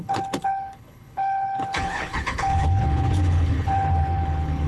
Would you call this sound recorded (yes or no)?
no